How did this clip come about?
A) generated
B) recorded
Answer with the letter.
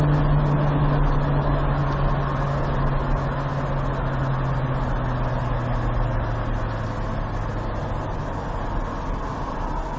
B